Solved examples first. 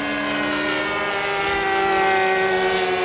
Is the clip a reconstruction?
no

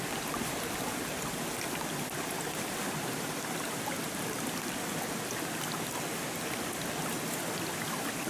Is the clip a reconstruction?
no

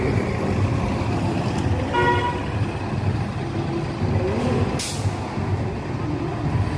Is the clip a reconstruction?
no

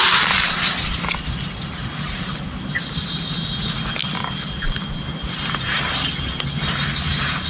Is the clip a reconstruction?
no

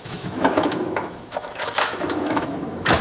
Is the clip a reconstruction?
yes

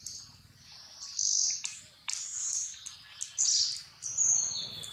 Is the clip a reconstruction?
no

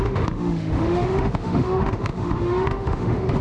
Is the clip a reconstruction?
yes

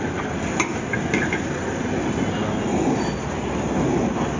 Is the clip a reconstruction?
no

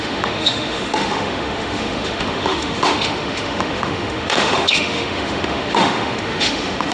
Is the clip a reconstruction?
yes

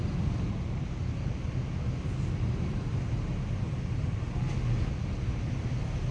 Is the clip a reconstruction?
no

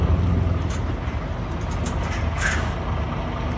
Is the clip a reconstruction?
no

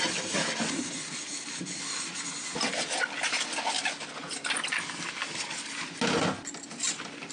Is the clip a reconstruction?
no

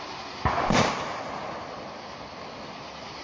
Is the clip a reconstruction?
no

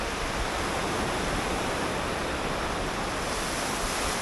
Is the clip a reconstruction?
no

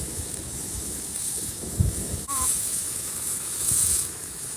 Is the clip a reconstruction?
yes